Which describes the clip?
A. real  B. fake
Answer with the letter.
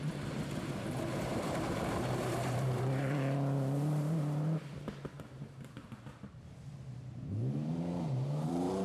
B